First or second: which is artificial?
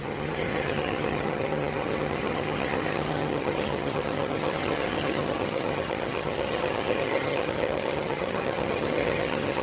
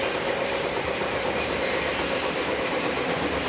first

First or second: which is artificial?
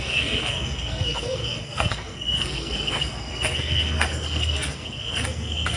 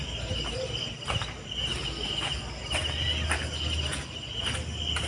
first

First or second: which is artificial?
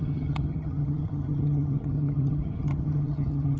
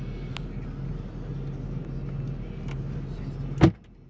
first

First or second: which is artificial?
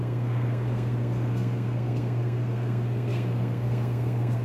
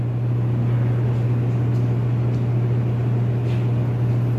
first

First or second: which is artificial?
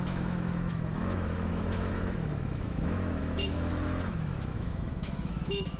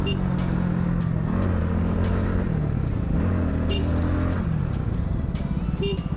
first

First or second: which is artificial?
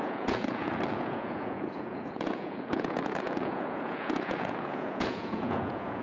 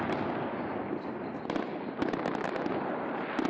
first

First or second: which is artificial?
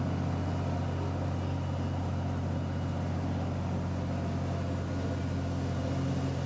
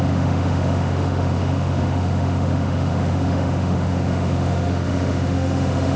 second